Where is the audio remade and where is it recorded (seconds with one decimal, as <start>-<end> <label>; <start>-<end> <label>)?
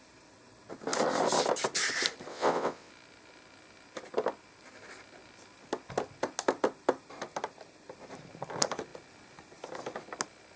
0.0-2.3 recorded; 2.3-2.9 remade; 2.9-10.6 recorded